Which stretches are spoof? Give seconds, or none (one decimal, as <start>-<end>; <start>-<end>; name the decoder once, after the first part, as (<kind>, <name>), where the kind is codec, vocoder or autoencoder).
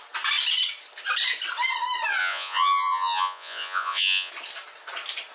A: 2.2-4.3 (vocoder, Vocos)